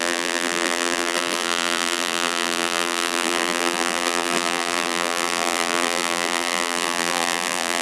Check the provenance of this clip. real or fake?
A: fake